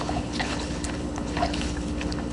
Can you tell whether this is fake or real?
fake